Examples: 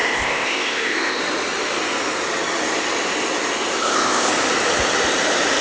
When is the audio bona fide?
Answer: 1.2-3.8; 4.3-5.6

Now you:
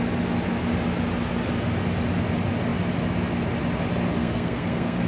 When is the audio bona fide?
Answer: 0.0-4.2

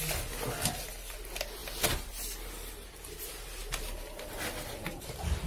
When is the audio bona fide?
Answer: 0.0-5.5